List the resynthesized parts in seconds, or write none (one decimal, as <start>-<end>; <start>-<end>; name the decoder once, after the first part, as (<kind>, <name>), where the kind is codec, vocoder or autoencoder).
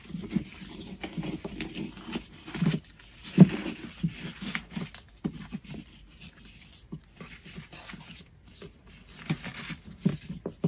none